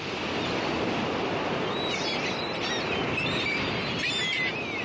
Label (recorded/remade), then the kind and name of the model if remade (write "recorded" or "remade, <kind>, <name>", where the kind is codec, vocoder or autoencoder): recorded